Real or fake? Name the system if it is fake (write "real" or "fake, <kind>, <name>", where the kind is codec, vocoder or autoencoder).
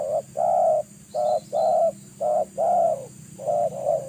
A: real